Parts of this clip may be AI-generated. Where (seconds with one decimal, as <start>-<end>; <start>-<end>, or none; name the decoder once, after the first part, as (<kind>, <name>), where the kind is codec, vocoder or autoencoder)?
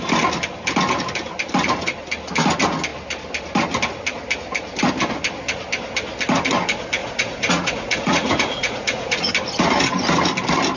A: 7.0-9.3 (vocoder, Vocos)